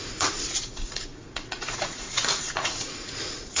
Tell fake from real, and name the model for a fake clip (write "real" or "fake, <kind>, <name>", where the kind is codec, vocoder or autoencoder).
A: fake, vocoder, Vocos